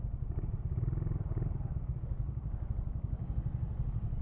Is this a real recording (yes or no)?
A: yes